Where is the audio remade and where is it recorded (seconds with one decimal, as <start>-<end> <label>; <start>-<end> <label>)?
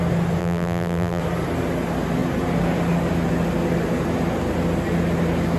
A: 0.0-0.4 recorded; 0.4-1.2 remade; 1.2-5.6 recorded